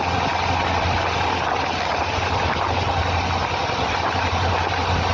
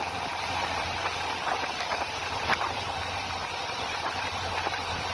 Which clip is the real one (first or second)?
first